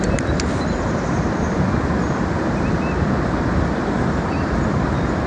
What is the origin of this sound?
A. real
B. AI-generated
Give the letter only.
A